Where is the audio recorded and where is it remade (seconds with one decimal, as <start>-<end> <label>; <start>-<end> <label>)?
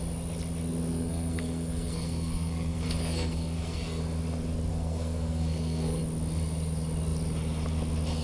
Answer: 0.0-0.9 recorded; 0.9-4.0 remade; 4.0-4.7 recorded; 4.7-6.0 remade; 6.0-8.2 recorded